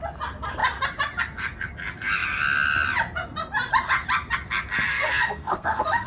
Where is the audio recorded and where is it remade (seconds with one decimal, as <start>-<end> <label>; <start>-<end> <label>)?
0.0-4.9 recorded; 4.9-6.1 remade